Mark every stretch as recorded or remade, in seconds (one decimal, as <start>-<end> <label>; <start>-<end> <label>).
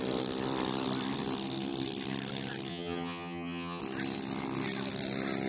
0.0-2.7 recorded; 2.7-3.8 remade; 3.8-5.5 recorded